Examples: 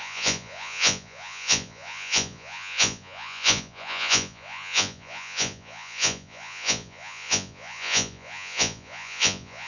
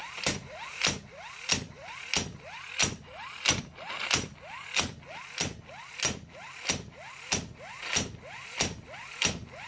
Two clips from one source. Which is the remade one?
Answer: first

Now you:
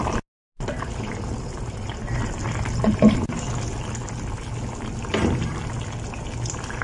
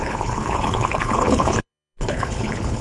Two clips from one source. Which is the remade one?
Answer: second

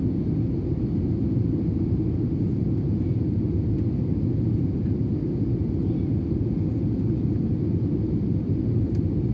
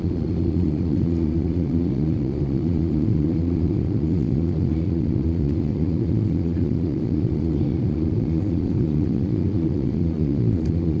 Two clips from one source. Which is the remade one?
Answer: second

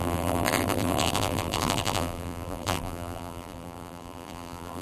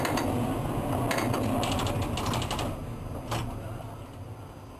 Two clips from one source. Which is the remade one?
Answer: first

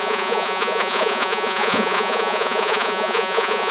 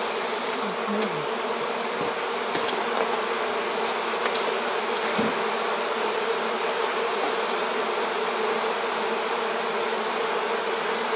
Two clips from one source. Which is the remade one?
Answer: first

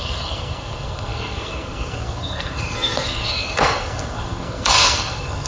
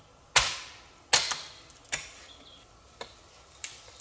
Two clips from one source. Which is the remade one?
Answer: first